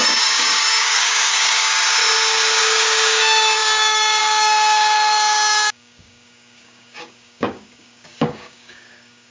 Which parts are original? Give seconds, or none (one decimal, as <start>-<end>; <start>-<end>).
2.0-2.6